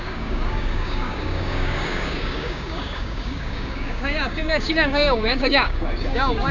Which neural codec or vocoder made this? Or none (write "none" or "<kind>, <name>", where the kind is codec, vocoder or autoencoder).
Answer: codec, DAC